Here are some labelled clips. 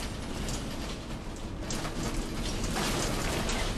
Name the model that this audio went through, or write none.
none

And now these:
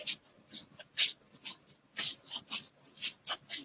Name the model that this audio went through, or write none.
none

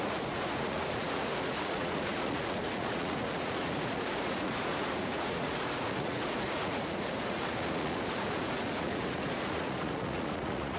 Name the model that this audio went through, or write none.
vocoder, Vocos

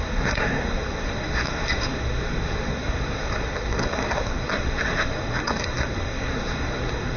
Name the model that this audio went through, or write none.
codec, SNAC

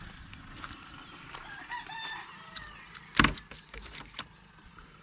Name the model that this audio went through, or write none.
vocoder, BigVGAN v2